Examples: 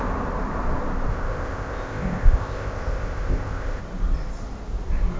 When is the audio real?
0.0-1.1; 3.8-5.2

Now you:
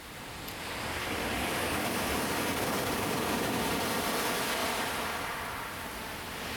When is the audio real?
0.0-1.0; 3.6-6.6

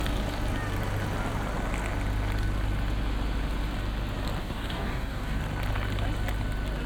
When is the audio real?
0.0-4.4; 5.4-6.9

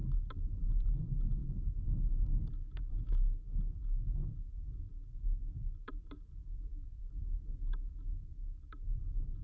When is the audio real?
0.0-0.7; 1.4-5.9; 7.0-8.2

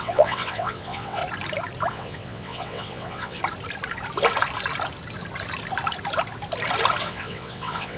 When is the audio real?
1.2-1.9; 3.4-7.0

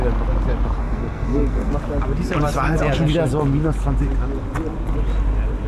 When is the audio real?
0.0-0.8; 1.7-5.7

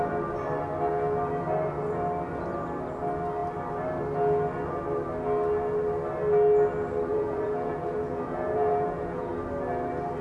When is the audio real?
0.0-7.1; 9.3-10.2

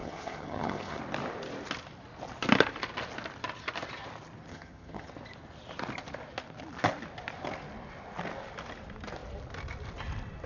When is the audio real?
1.0-4.5; 5.1-10.5